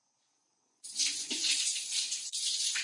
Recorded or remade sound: remade